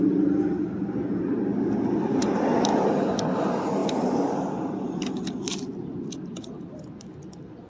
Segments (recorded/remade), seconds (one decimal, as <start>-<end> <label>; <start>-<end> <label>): 0.0-7.7 recorded